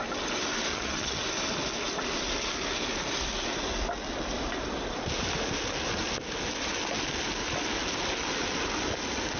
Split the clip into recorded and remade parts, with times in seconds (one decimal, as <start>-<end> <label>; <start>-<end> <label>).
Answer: 0.0-0.7 recorded; 0.7-1.2 remade; 1.2-9.4 recorded